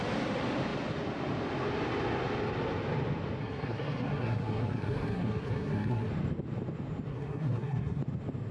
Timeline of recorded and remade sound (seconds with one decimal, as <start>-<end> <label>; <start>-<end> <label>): 0.0-3.4 recorded; 3.4-6.1 remade; 6.1-7.1 recorded; 7.1-8.0 remade; 8.0-8.5 recorded